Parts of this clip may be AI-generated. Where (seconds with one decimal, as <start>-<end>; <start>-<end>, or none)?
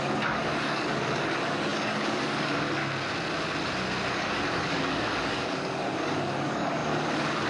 0.0-2.8; 4.1-7.5